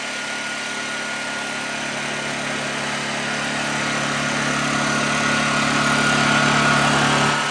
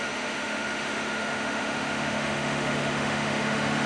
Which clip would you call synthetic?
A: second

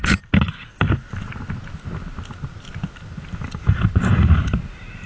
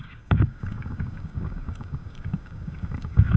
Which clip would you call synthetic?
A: second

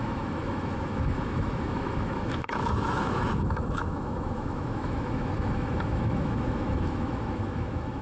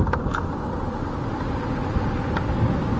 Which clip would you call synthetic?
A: first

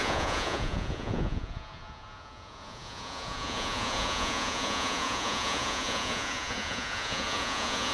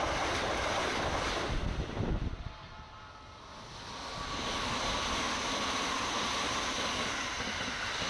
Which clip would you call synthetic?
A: first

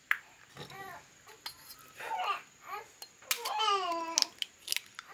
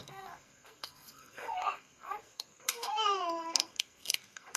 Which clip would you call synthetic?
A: second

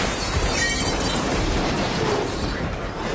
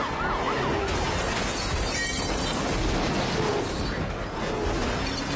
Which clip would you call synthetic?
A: first